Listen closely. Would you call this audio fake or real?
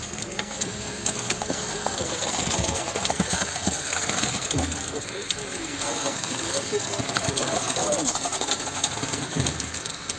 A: fake